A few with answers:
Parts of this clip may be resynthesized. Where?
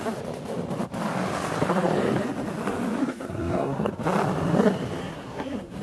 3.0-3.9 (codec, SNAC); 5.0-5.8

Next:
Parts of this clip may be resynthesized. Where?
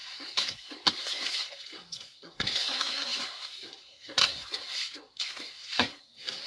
0.0-6.5 (codec, SNAC)